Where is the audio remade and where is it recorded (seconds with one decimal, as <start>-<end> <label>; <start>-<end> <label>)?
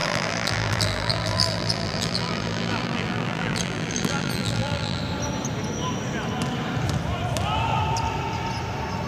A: 0.0-5.0 remade; 5.0-9.1 recorded